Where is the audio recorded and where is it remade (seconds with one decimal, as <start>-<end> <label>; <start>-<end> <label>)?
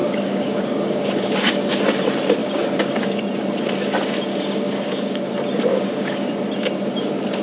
0.0-1.8 remade; 1.8-2.4 recorded; 2.4-3.2 remade; 3.2-4.3 recorded; 4.3-5.2 remade; 5.2-5.7 recorded; 5.7-6.3 remade; 6.3-7.4 recorded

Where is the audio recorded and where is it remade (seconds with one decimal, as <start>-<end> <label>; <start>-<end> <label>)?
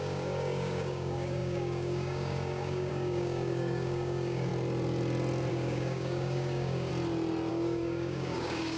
0.0-4.5 remade; 4.5-5.5 recorded; 5.5-6.9 remade; 6.9-7.5 recorded; 7.5-8.8 remade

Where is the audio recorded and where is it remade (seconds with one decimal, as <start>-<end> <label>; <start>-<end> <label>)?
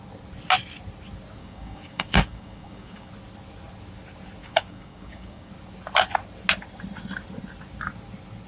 0.0-1.4 recorded; 1.4-3.1 remade; 3.1-4.4 recorded; 4.4-5.5 remade; 5.5-8.5 recorded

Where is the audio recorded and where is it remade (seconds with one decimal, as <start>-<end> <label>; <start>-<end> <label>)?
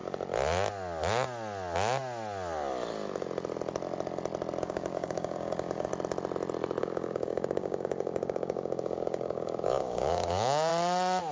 0.0-4.6 recorded; 4.6-5.9 remade; 5.9-6.8 recorded; 6.8-10.7 remade; 10.7-11.3 recorded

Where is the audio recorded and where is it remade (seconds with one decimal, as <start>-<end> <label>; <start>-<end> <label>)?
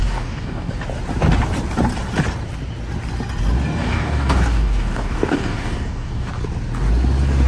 0.0-0.7 remade; 0.7-3.8 recorded; 3.8-6.3 remade; 6.3-7.5 recorded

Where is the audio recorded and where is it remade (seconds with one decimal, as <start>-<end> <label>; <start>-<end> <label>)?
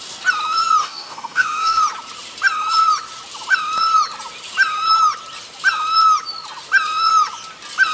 0.0-0.8 recorded; 0.8-1.8 remade; 1.8-7.9 recorded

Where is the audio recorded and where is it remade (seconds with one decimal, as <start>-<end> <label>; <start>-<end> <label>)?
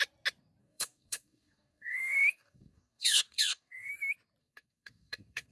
0.0-0.6 recorded; 0.6-3.9 remade; 3.9-4.4 recorded; 4.4-5.5 remade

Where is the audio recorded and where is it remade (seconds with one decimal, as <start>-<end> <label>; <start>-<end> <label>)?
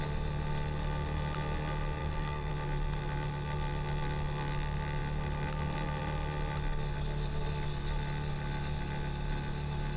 0.0-2.0 recorded; 2.0-2.5 remade; 2.5-10.0 recorded